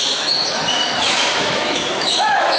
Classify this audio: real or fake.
fake